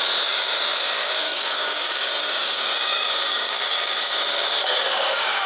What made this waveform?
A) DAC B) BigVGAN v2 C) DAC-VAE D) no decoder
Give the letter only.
A